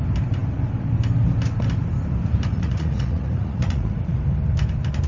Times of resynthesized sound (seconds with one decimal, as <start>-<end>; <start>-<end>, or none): 2.5-4.2